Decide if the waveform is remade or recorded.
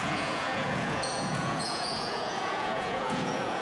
remade